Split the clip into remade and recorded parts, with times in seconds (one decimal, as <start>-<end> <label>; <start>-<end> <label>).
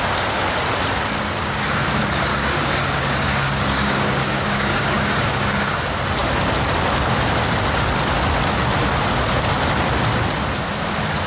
0.0-1.4 recorded; 1.4-1.9 remade; 1.9-2.3 recorded; 2.3-5.7 remade; 5.7-11.3 recorded